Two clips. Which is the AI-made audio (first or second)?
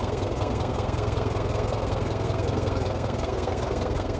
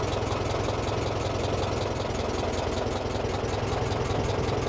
first